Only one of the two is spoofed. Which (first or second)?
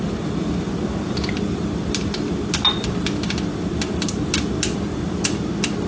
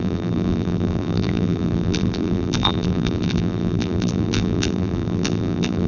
second